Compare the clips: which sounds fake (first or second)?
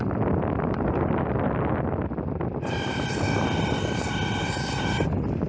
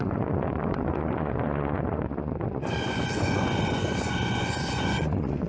second